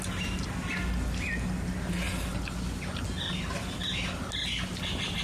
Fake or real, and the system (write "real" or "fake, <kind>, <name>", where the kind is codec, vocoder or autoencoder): real